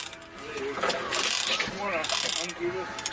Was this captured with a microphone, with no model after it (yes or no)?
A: yes